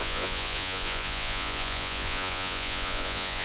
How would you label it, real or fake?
fake